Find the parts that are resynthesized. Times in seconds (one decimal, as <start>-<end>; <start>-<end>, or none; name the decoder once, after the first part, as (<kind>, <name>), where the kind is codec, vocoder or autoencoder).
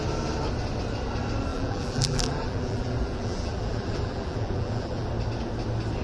1.5-5.1 (vocoder, BigVGAN v2)